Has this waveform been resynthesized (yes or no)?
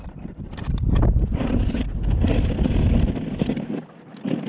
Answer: no